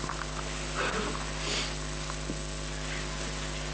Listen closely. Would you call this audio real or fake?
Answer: real